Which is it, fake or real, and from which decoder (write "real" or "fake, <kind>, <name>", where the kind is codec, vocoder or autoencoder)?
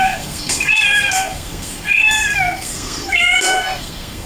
fake, codec, SNAC